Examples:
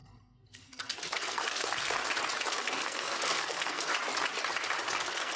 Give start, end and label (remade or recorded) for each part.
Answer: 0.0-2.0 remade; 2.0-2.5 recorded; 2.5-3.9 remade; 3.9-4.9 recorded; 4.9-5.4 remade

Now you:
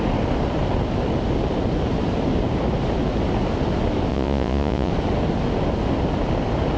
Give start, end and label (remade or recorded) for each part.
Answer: 0.0-4.1 recorded; 4.1-4.9 remade; 4.9-6.8 recorded